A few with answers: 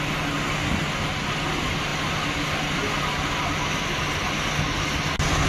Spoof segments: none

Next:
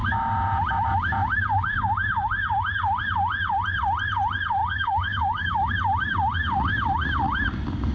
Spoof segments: 4.6-5.7 (codec, DAC)

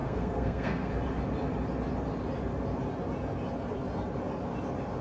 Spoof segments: 0.0-0.9 (codec, SNAC)

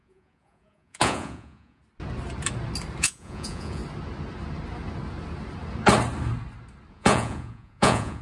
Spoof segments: 0.0-1.8 (vocoder, Vocos); 3.0-3.8; 6.9-8.2